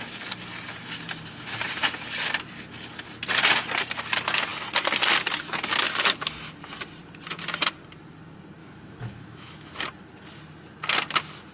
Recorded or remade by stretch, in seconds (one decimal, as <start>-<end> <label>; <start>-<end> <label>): 0.0-8.6 recorded; 8.6-9.8 remade; 9.8-11.5 recorded

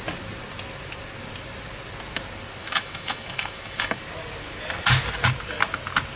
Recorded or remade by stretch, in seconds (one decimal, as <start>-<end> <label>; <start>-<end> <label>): 0.0-2.6 recorded; 2.6-4.0 remade; 4.0-6.2 recorded